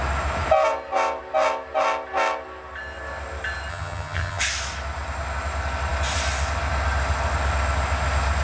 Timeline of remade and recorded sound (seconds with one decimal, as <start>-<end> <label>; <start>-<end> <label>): 0.0-3.7 recorded; 3.7-4.4 remade; 4.4-8.4 recorded